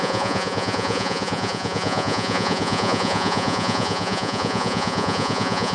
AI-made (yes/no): yes